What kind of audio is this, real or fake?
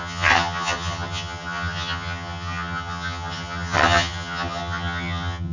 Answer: fake